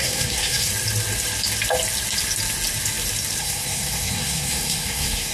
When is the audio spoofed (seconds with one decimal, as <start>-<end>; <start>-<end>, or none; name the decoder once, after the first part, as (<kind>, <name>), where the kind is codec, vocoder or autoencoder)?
0.0-0.7 (codec, SNAC); 3.4-5.3